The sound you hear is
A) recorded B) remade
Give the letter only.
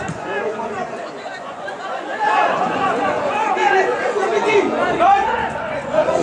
B